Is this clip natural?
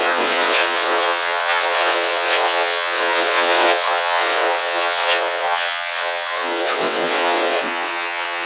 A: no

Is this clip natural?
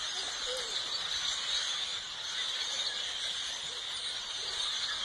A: yes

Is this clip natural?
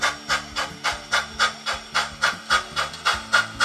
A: yes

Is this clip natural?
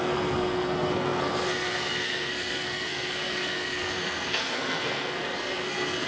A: no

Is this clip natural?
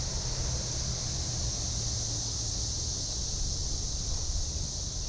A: yes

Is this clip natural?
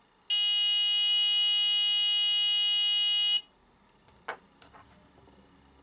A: yes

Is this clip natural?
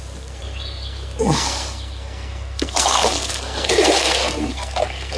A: no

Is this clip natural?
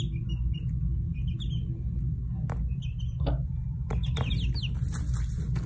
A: yes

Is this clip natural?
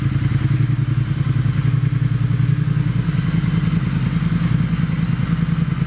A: yes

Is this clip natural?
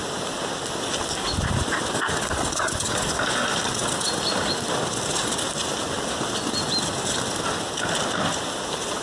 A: yes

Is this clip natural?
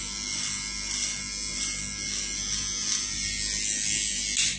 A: yes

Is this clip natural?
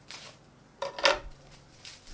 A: yes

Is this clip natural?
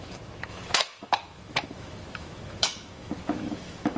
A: no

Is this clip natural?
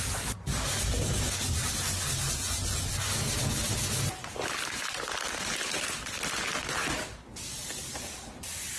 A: yes